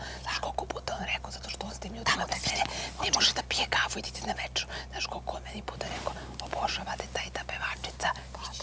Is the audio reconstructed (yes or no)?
no